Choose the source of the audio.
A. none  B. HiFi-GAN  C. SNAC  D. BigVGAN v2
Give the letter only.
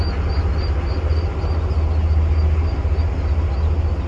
A